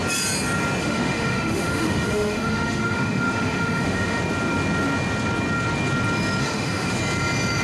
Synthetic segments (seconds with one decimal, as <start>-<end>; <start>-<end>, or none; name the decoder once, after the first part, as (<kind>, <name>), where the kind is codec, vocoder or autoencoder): 0.8-4.2 (autoencoder, DAC-VAE); 6.4-7.0